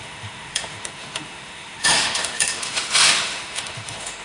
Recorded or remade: remade